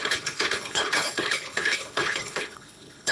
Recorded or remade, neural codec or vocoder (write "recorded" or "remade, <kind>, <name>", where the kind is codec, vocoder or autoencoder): remade, codec, HILCodec